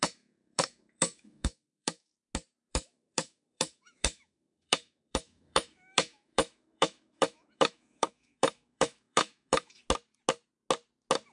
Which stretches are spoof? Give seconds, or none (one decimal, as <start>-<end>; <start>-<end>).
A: 0.0-2.1; 2.7-9.8